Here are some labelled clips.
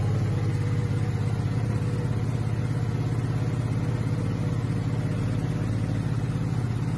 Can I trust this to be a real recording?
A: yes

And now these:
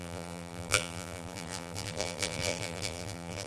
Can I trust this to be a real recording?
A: no